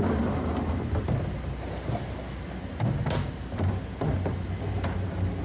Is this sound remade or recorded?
recorded